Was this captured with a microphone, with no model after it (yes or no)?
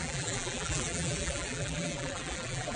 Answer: no